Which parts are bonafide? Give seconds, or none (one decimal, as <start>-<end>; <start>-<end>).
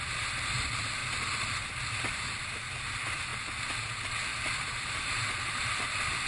0.0-4.3; 5.3-6.3